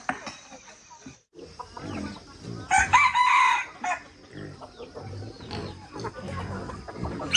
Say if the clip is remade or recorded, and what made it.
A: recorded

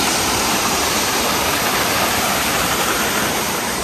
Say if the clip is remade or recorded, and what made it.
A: remade, vocoder, BigVGAN v2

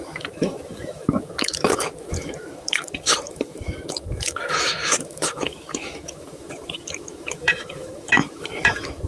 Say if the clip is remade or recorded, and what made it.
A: remade, autoencoder, DAC-VAE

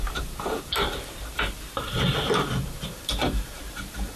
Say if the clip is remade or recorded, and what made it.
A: remade, vocoder, BigVGAN v2